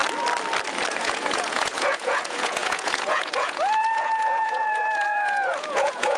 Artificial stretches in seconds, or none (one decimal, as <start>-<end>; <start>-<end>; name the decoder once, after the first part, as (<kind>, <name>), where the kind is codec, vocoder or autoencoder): 0.9-6.2 (vocoder, Vocos)

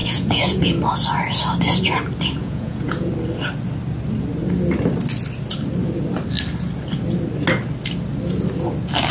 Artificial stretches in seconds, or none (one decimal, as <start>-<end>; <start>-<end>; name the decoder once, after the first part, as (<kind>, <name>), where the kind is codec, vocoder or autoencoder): 0.0-0.8 (vocoder, Vocos); 2.4-3.1

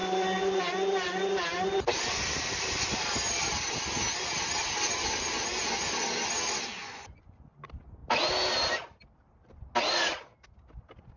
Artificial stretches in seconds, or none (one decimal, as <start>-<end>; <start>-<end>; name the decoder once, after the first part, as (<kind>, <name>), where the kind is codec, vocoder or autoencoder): 6.8-7.6 (vocoder, Vocos)

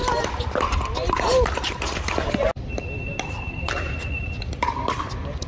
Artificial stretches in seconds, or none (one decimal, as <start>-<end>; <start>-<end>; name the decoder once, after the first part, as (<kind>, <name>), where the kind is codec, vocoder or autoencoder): none